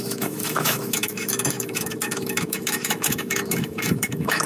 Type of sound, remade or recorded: remade